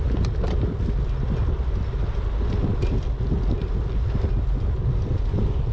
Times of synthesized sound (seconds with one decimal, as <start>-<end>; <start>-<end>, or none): none